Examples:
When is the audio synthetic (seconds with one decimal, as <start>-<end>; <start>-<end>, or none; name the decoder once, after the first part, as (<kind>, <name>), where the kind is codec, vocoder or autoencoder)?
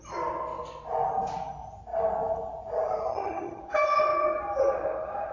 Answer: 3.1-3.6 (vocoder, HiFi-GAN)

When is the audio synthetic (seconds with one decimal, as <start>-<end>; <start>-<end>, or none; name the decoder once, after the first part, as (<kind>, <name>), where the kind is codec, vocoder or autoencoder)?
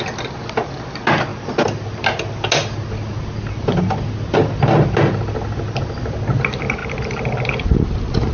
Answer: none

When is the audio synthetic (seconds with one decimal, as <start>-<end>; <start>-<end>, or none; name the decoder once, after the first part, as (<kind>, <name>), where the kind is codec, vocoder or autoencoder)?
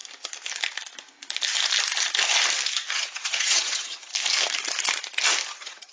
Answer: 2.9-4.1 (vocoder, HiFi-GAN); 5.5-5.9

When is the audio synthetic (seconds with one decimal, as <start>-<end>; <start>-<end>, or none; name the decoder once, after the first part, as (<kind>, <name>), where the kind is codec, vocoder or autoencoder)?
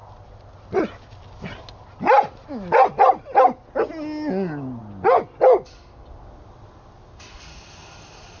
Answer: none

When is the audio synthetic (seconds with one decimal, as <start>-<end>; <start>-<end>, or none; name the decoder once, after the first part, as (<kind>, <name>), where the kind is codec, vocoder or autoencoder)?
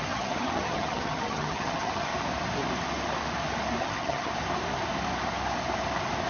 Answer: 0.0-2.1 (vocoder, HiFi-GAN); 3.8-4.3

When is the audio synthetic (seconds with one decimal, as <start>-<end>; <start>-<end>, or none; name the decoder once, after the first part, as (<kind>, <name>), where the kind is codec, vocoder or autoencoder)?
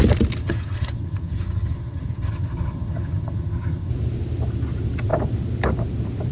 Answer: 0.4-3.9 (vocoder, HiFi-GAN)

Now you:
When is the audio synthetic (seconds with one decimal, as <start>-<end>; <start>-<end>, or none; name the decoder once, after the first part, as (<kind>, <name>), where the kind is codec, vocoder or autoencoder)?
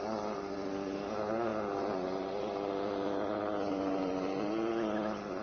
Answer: none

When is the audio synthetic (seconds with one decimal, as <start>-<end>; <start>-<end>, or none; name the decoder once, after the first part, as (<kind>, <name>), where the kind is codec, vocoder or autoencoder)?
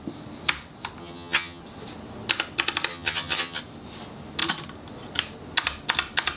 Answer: 1.0-1.6 (vocoder, HiFi-GAN); 2.9-3.6